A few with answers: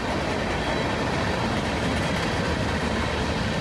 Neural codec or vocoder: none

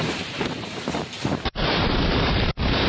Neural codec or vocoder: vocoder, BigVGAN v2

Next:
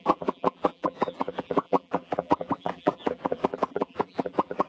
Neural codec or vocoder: vocoder, BigVGAN v2